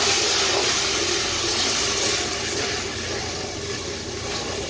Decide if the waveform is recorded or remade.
recorded